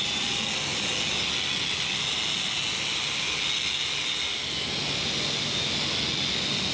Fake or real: real